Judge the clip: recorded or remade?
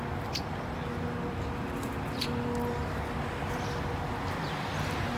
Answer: recorded